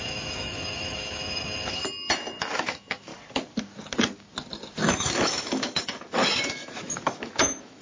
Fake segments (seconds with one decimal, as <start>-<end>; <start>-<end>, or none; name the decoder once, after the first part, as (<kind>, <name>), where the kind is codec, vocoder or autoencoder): 0.0-1.8 (autoencoder, DAC-VAE); 2.4-3.1; 4.8-7.8